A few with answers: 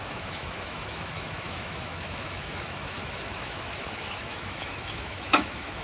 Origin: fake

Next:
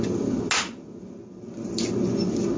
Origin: real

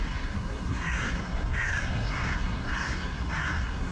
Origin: fake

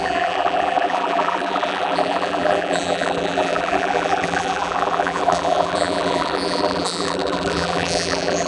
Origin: fake